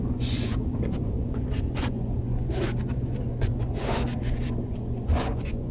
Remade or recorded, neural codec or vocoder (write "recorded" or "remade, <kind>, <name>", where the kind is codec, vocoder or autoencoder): remade, vocoder, Vocos